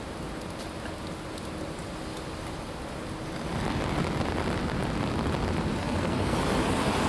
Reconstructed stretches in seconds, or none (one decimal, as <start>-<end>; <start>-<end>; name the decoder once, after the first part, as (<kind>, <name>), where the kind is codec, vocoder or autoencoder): 5.8-6.4 (codec, SNAC)